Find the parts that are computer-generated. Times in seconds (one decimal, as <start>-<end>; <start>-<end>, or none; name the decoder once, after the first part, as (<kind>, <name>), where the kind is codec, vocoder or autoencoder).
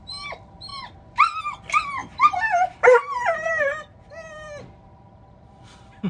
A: 2.0-6.1 (vocoder, BigVGAN v2)